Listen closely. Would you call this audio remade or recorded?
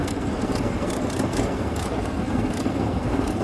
remade